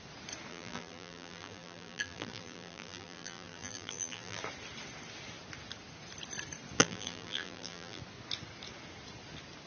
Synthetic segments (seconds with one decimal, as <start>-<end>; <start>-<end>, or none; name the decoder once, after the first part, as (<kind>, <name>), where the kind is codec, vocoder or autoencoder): 0.5-4.4 (vocoder, BigVGAN v2); 6.8-8.0

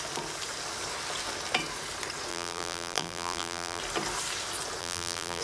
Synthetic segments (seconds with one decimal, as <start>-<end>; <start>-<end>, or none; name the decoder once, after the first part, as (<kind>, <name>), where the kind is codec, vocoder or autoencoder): 2.3-3.8 (vocoder, BigVGAN v2); 4.8-5.4

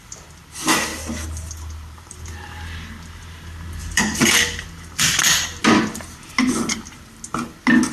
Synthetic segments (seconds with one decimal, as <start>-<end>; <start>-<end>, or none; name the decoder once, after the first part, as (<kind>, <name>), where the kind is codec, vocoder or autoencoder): 0.0-5.6 (vocoder, BigVGAN v2)

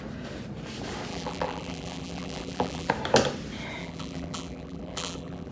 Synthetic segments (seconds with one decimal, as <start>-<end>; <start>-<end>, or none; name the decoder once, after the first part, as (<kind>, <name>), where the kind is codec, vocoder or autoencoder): 1.1-2.9 (vocoder, BigVGAN v2); 3.8-5.5

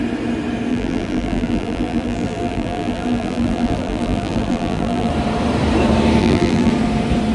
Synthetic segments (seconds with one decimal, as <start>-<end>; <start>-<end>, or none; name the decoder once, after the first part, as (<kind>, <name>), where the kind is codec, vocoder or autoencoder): 0.7-5.1 (vocoder, BigVGAN v2); 6.2-6.7

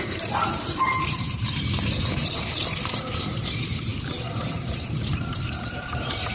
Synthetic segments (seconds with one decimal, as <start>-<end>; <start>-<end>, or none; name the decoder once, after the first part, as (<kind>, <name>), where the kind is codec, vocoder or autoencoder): 0.0-6.3 (vocoder, BigVGAN v2)

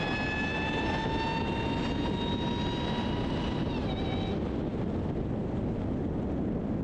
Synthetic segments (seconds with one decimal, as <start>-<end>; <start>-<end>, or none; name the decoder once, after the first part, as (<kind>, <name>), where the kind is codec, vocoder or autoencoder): none